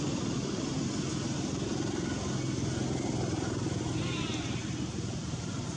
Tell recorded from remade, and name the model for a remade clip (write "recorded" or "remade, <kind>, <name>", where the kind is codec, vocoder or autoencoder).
recorded